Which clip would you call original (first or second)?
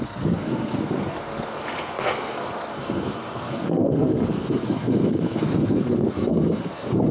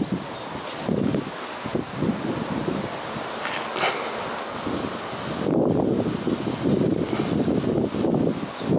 second